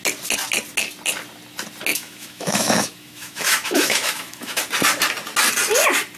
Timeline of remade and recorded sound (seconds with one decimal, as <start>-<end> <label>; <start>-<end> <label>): 0.0-1.9 recorded; 1.9-4.6 remade; 4.6-6.2 recorded

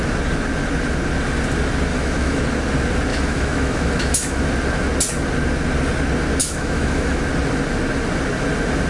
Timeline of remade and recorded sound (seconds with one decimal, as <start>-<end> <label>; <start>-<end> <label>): 0.0-1.9 recorded; 1.9-2.4 remade; 2.4-3.1 recorded; 3.1-4.5 remade; 4.5-6.4 recorded; 6.4-7.2 remade; 7.2-8.9 recorded

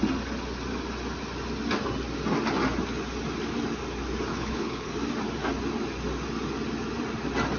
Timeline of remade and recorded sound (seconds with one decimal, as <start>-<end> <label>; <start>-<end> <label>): 0.0-4.3 recorded; 4.3-4.9 remade; 4.9-7.6 recorded

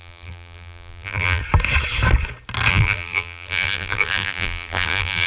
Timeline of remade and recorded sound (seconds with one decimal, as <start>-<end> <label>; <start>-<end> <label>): 0.0-1.4 remade; 1.4-2.7 recorded; 2.7-5.3 remade

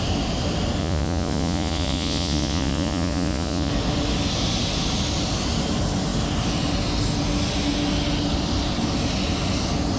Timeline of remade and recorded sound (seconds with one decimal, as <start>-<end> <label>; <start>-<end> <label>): 0.0-0.8 recorded; 0.8-3.7 remade; 3.7-10.0 recorded

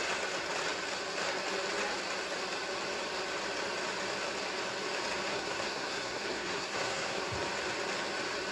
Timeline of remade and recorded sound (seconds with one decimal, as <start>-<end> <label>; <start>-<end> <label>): 0.0-5.3 recorded; 5.3-7.2 remade; 7.2-8.5 recorded

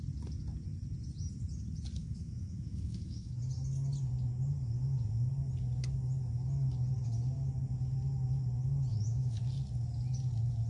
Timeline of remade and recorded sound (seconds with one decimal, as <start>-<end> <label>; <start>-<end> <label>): 0.0-2.0 recorded; 2.0-3.4 remade; 3.4-8.9 recorded; 8.9-9.4 remade; 9.4-10.7 recorded